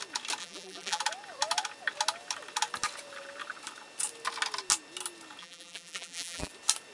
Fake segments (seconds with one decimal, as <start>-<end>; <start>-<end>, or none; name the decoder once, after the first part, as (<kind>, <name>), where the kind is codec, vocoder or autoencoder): 0.4-1.0 (vocoder, BigVGAN v2); 5.4-6.5